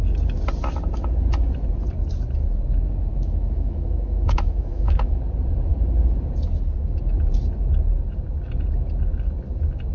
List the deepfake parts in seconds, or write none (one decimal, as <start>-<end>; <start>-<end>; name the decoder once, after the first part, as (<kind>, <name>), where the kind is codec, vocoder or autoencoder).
3.1-5.2 (autoencoder, DAC-VAE)